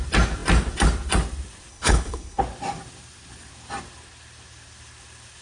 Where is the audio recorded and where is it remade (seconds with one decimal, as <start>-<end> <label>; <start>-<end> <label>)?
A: 0.0-1.7 recorded; 1.7-2.4 remade; 2.4-5.4 recorded